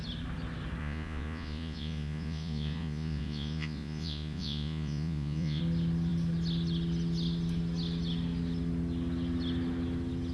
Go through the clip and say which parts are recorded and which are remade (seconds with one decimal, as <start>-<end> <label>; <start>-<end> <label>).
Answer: 0.0-0.8 recorded; 0.8-5.6 remade; 5.6-10.3 recorded